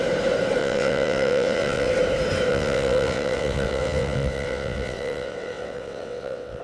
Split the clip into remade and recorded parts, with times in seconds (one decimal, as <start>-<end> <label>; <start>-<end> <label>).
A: 0.0-0.6 recorded; 0.6-1.9 remade; 1.9-2.5 recorded; 2.5-6.6 remade